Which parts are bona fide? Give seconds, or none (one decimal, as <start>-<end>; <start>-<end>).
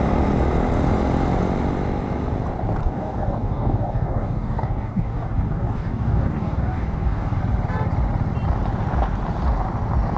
0.0-2.8; 7.4-10.2